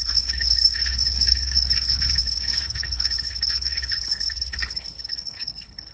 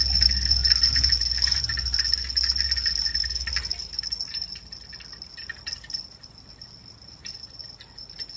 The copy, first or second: first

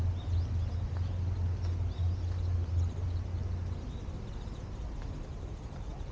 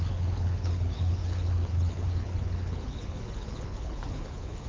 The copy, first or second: second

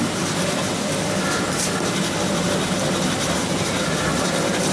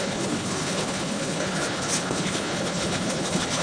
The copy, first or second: second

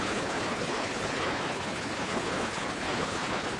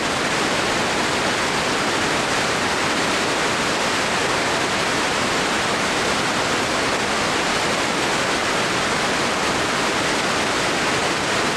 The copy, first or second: first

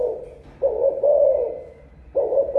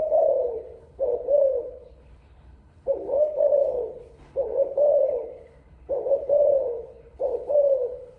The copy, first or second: second